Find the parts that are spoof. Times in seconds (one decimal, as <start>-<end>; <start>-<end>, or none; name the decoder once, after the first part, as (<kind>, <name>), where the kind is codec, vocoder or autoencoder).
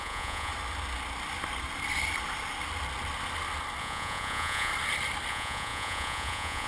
0.0-0.5 (vocoder, Vocos); 3.8-4.7; 5.3-6.7